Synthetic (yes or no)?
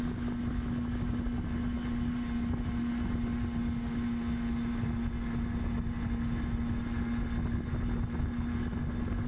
no